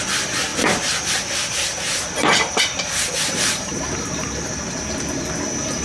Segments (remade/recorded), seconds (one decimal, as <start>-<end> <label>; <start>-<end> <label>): 0.0-0.5 recorded; 0.5-4.0 remade; 4.0-5.8 recorded